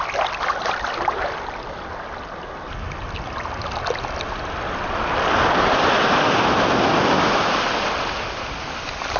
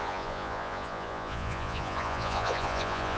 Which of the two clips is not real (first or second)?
second